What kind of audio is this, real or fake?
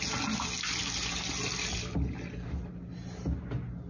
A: real